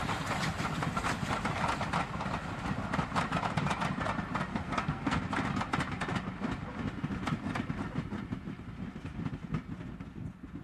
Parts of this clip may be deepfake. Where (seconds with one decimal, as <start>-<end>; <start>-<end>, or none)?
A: 4.5-5.2